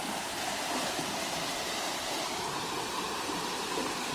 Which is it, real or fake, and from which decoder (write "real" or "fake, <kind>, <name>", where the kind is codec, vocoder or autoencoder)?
fake, vocoder, BigVGAN v2